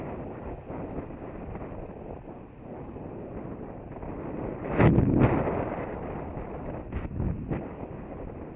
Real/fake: real